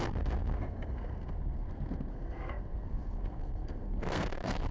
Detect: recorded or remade remade